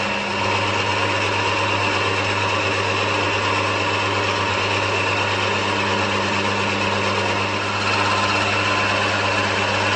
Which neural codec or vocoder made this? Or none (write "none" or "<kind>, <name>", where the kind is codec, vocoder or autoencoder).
none